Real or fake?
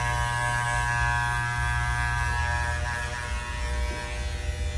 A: real